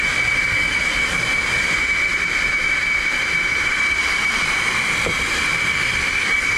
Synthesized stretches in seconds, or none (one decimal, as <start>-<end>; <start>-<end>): 2.1-6.1